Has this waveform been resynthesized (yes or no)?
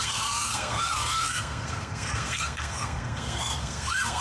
yes